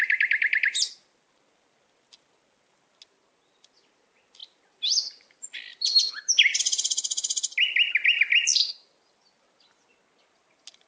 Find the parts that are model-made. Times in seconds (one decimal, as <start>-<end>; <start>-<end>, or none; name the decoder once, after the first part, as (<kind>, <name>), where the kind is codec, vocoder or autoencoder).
none